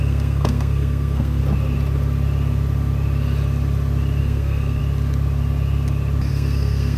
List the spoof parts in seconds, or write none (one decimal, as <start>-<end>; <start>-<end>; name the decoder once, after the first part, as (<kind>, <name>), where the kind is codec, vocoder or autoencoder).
0.0-1.4 (codec, SNAC); 4.2-4.8; 6.3-7.0